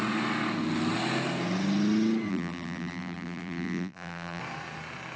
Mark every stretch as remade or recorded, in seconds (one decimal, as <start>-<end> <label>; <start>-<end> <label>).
0.0-2.3 recorded; 2.3-4.4 remade; 4.4-5.2 recorded